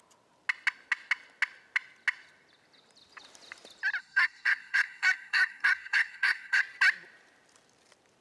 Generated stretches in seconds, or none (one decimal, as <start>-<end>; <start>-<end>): 4.0-6.6